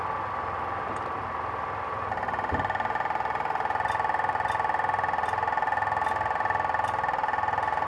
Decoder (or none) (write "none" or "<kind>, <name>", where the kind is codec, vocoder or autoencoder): vocoder, BigVGAN v2